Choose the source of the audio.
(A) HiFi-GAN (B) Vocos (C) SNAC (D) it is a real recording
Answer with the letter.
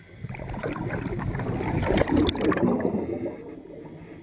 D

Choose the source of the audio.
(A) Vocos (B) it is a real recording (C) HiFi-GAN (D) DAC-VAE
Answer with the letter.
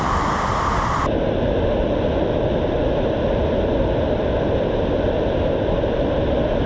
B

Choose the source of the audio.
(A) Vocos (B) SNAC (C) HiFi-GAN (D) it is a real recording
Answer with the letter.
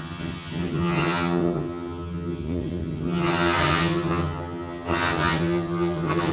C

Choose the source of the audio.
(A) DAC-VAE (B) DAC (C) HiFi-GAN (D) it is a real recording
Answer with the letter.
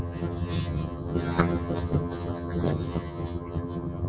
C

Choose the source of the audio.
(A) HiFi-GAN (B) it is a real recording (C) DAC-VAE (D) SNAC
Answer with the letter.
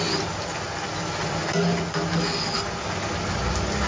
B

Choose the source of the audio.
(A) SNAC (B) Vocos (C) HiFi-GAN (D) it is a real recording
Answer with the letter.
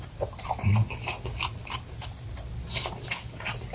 D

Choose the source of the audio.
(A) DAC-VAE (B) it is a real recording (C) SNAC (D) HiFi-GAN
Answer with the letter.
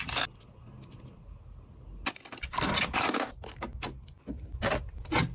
B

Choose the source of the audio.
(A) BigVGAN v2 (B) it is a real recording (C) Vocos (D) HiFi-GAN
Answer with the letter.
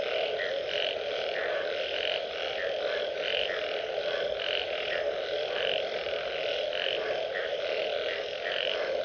B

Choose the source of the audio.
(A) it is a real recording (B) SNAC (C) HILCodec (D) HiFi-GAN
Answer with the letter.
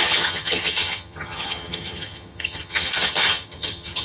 D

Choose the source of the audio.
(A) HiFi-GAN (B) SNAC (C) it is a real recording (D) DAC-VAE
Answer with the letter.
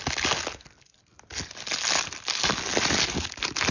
C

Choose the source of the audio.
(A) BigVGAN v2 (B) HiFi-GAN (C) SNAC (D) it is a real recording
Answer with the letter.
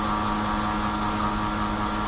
D